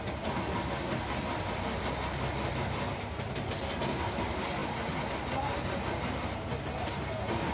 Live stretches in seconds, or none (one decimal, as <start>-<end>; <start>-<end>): 0.0-7.5